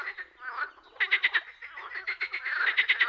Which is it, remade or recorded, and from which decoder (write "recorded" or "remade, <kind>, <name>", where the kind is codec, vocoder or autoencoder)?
recorded